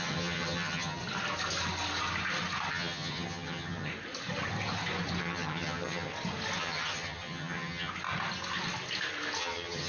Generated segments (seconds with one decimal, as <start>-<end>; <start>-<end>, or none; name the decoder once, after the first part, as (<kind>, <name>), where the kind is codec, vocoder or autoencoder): 0.0-1.0 (vocoder, HiFi-GAN); 2.7-3.9; 5.2-6.1; 6.6-7.9; 9.4-9.9